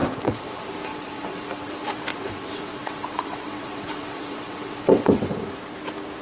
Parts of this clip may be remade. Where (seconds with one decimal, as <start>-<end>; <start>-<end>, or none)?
0.0-0.5; 0.9-1.7; 2.1-5.5